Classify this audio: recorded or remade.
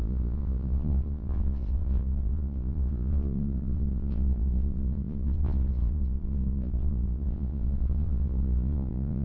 remade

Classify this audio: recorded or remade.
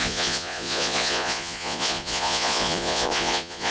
remade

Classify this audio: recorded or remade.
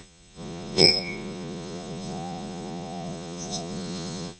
remade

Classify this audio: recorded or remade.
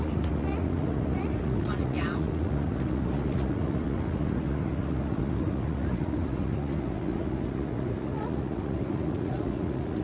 remade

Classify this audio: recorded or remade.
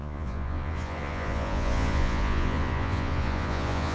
remade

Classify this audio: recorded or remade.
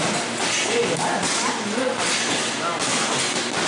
recorded